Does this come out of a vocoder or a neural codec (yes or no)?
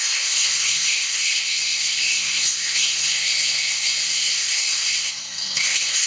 yes